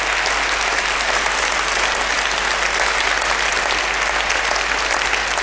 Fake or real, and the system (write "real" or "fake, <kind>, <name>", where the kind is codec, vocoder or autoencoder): real